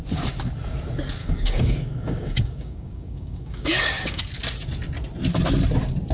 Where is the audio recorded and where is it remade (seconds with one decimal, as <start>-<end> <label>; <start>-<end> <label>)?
0.0-1.2 recorded; 1.2-4.2 remade; 4.2-6.1 recorded